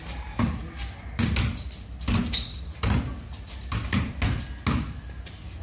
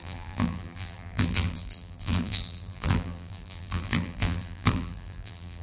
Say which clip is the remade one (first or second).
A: second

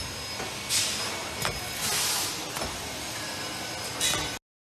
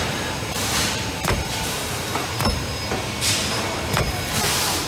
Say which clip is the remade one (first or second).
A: second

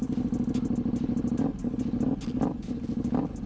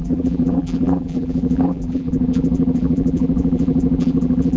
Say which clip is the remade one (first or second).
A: second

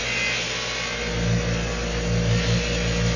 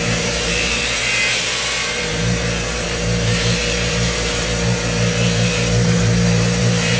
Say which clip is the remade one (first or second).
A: second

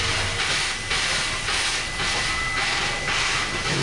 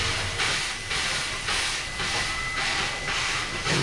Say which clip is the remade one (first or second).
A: second